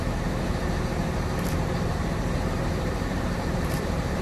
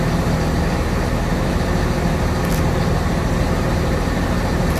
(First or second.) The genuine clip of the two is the second